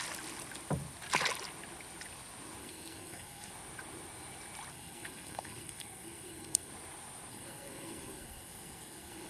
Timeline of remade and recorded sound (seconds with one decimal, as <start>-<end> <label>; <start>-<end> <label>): 0.0-2.6 recorded; 2.6-3.5 remade; 3.5-4.7 recorded; 4.7-6.7 remade; 6.7-7.3 recorded; 7.3-9.3 remade

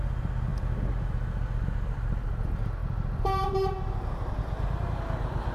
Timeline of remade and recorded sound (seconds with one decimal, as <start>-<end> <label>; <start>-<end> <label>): 0.0-5.5 recorded

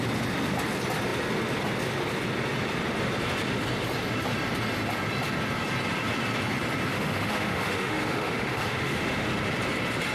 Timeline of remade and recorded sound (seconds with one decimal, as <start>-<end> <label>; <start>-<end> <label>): 0.0-6.9 recorded; 6.9-9.3 remade; 9.3-10.1 recorded